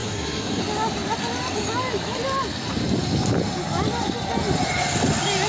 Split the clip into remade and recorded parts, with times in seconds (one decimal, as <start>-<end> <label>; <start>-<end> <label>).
0.0-0.6 remade; 0.6-5.5 recorded